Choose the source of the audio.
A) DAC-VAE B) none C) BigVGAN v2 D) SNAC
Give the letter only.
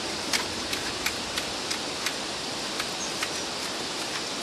B